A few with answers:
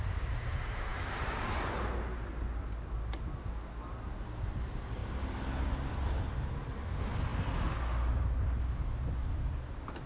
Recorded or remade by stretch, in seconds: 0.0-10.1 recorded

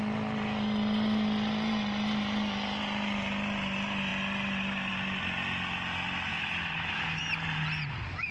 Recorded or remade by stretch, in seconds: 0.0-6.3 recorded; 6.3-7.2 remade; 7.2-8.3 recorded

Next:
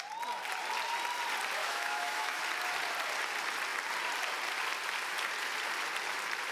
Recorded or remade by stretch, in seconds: 0.0-1.6 recorded; 1.6-2.4 remade; 2.4-6.5 recorded

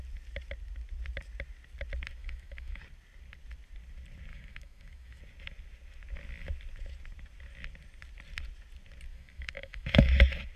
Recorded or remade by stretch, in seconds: 0.0-2.2 recorded; 2.2-2.8 remade; 2.8-4.3 recorded; 4.3-5.2 remade; 5.2-9.1 recorded; 9.1-10.1 remade; 10.1-10.6 recorded

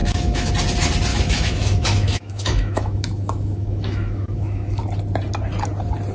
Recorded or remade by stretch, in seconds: 0.0-0.5 remade; 0.5-1.1 recorded; 1.1-4.8 remade; 4.8-6.1 recorded

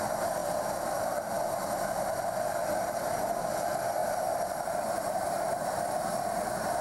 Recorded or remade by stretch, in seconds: 0.0-6.8 recorded